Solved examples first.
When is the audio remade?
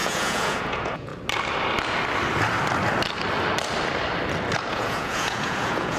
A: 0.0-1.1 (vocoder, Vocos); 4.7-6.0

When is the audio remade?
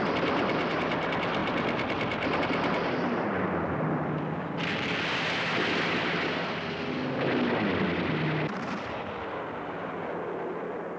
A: none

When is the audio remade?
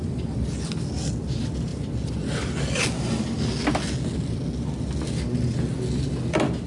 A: none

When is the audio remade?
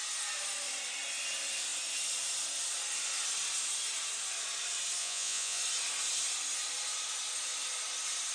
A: 5.0-5.6 (vocoder, Vocos)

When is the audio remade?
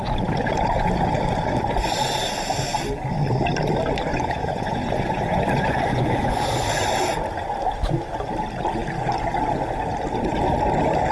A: 4.1-6.4 (vocoder, Vocos)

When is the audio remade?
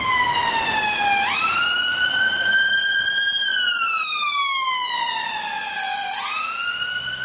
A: none